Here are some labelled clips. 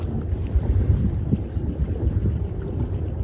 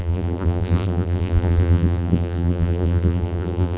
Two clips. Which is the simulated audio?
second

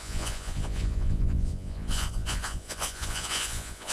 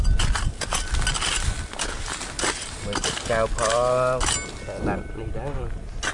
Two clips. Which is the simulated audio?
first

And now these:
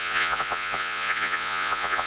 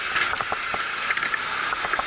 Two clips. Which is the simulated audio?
first